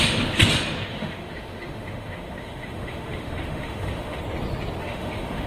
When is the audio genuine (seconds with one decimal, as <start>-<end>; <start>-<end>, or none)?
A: 0.0-0.9; 4.2-4.8